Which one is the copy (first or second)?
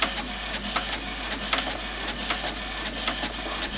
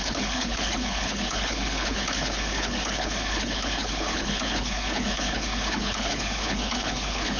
second